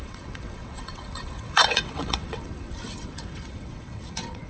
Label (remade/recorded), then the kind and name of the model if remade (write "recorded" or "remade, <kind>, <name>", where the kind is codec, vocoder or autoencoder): remade, vocoder, WaveNeXt